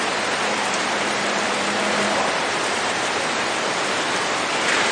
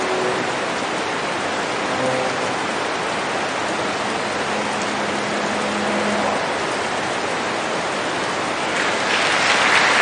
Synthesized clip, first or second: first